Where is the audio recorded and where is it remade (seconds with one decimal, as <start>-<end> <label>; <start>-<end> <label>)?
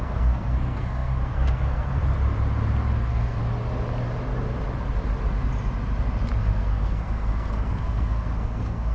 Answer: 0.0-2.0 remade; 2.0-3.0 recorded; 3.0-3.4 remade; 3.4-6.4 recorded; 6.4-8.9 remade